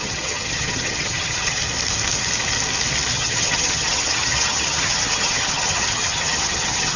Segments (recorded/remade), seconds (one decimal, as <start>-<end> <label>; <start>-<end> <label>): 0.0-1.6 remade; 1.6-3.1 recorded; 3.1-7.0 remade